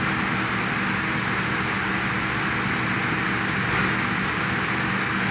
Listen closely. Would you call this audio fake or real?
real